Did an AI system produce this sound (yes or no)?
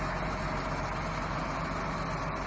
no